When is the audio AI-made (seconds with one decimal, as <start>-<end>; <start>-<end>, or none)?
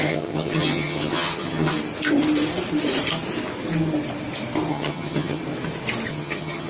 0.0-1.7; 4.7-5.4; 6.1-6.7